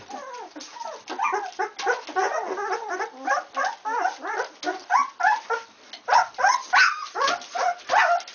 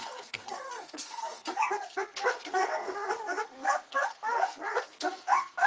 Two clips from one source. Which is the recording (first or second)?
first